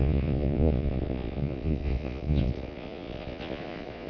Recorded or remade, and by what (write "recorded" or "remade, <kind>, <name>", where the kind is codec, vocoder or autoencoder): remade, vocoder, Vocos